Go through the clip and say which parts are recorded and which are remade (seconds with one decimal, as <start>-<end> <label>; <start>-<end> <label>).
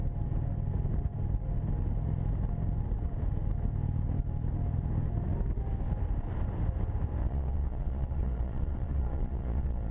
0.0-7.2 recorded; 7.2-9.9 remade